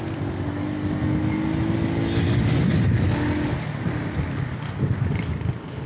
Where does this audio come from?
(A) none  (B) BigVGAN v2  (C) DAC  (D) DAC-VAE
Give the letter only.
A